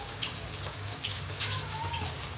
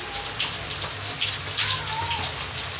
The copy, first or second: first